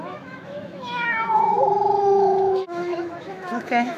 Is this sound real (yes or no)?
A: no